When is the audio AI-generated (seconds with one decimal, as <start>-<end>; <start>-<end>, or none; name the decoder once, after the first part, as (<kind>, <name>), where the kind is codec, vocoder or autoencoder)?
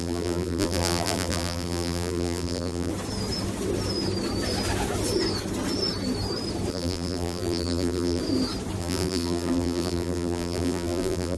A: 0.0-2.9 (vocoder, BigVGAN v2); 6.7-8.2; 8.8-11.4